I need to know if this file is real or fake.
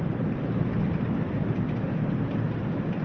real